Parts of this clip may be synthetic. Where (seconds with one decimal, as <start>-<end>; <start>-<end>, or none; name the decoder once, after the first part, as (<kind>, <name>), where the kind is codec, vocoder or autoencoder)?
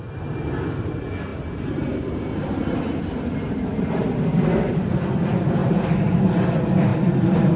1.3-5.0 (vocoder, BigVGAN v2); 5.6-6.2; 6.9-7.6